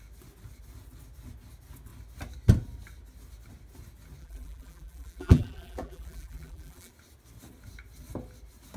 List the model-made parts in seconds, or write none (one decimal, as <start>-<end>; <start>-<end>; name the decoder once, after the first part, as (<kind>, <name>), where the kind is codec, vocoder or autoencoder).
4.2-6.9 (vocoder, BigVGAN v2)